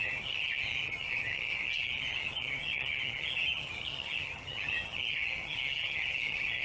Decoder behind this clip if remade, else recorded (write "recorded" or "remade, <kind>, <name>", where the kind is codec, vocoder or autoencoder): remade, vocoder, HiFi-GAN